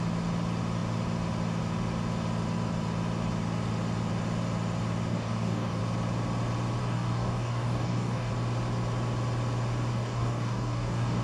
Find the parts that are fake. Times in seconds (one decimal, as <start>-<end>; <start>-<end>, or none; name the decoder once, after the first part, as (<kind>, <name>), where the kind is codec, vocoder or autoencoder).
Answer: 5.1-5.8 (codec, DAC); 6.8-8.3; 9.9-11.2